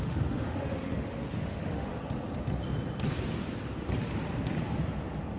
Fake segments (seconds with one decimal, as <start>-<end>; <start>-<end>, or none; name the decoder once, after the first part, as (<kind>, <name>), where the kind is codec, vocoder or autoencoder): 0.0-1.9 (autoencoder, DAC-VAE)